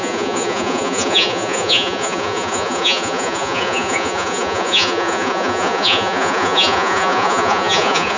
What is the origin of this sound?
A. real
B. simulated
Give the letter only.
B